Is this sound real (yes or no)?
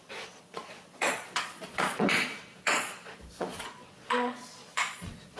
no